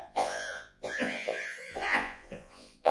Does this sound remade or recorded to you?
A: remade